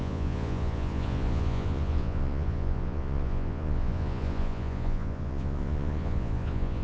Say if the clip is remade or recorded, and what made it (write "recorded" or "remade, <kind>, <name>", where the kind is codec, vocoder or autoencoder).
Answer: remade, vocoder, Vocos